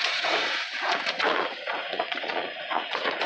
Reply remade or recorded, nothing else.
remade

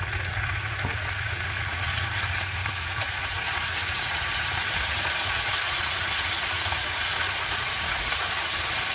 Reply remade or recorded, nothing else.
remade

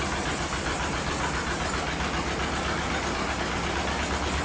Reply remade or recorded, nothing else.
recorded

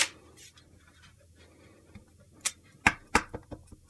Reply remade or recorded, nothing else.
recorded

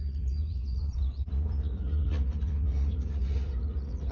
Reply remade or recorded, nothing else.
remade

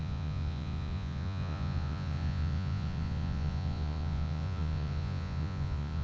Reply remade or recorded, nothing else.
remade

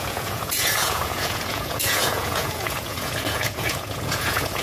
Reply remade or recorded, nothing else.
remade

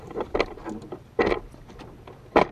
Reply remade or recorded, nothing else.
recorded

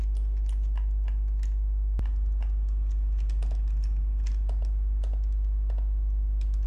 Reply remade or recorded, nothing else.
recorded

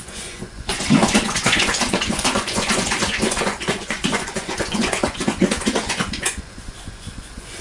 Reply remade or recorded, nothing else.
remade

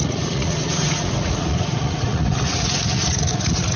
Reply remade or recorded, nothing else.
remade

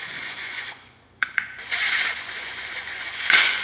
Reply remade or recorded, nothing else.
remade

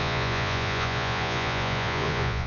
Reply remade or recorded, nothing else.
remade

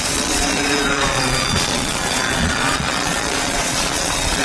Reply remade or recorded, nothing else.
remade